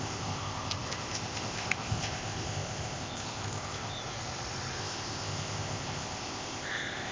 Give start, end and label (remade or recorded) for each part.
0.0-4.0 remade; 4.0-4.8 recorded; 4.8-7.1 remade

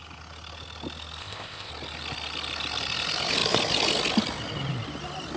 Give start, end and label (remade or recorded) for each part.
0.0-1.2 recorded; 1.2-1.7 remade; 1.7-5.4 recorded

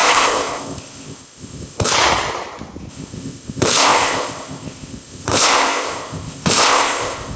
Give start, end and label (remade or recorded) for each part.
0.0-1.9 remade; 1.9-2.9 recorded; 2.9-7.4 remade